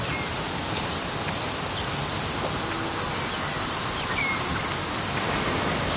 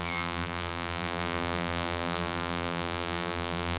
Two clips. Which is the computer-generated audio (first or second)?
second